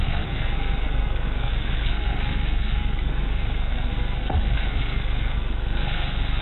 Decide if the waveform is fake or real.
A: fake